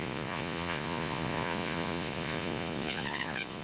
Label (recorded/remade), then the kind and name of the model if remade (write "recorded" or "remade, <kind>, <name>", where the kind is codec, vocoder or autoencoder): remade, vocoder, Vocos